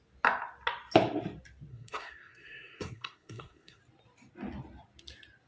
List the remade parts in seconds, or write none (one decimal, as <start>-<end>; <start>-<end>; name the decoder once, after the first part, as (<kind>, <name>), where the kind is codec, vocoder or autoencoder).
1.7-3.8 (codec, SNAC)